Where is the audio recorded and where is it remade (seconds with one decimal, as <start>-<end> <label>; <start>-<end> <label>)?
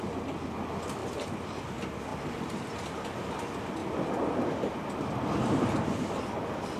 0.0-1.0 recorded; 1.0-1.6 remade; 1.6-2.1 recorded; 2.1-3.3 remade; 3.3-6.8 recorded